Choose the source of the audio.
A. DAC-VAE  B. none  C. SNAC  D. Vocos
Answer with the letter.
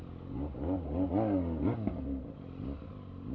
B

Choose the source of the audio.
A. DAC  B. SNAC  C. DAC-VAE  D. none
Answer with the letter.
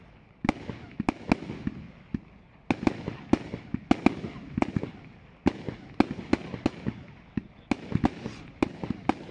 D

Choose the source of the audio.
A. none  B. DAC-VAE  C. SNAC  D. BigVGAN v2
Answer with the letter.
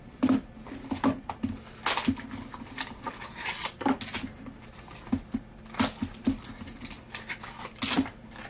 A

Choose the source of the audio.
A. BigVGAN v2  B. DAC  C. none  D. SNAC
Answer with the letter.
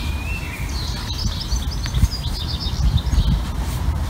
C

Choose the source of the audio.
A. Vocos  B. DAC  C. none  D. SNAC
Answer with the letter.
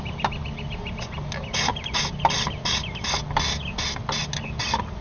C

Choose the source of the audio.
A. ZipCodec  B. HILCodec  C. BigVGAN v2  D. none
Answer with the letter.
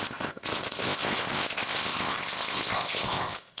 A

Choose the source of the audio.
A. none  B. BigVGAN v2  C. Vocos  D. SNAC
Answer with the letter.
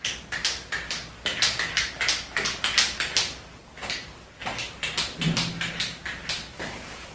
A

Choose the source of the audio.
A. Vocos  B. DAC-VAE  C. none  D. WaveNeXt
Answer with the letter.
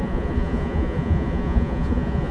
A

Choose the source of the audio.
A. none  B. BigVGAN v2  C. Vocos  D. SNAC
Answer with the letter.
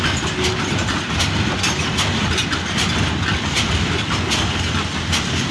A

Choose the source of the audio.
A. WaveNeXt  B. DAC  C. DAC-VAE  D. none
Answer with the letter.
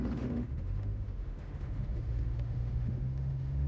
C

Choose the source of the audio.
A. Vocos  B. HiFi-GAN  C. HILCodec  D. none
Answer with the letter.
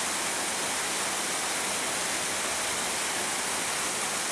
D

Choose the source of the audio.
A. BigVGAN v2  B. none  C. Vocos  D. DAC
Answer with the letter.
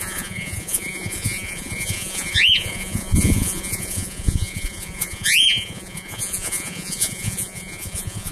C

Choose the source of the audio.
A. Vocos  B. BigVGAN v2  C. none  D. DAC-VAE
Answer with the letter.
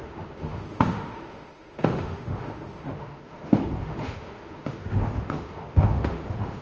D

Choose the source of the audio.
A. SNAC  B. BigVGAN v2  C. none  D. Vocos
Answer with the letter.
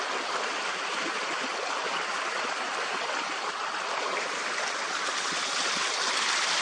B